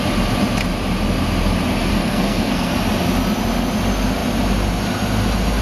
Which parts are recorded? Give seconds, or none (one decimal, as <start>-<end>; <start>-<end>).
0.0-1.9; 2.7-5.6